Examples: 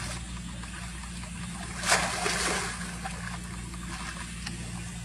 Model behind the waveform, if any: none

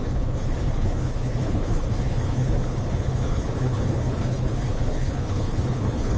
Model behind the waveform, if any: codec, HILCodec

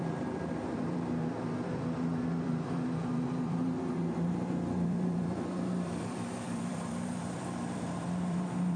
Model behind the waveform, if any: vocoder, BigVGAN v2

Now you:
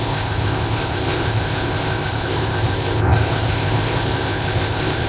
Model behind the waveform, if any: codec, ZipCodec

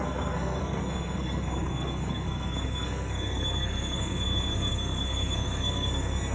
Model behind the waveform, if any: codec, SNAC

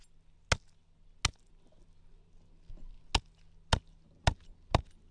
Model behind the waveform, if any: none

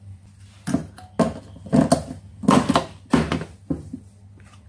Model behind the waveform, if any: none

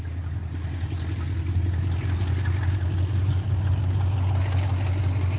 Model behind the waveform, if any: none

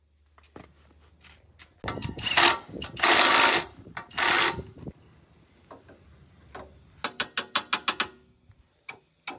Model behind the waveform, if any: none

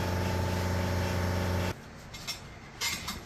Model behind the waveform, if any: none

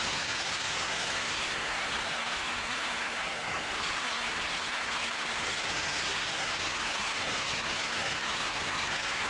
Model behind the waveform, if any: codec, SNAC